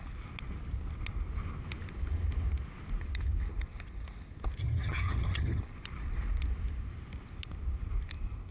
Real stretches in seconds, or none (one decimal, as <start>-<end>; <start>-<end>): 0.0-4.6; 5.6-8.5